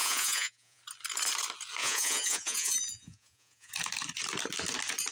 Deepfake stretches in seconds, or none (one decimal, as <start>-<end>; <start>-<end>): 0.0-0.8; 1.8-3.7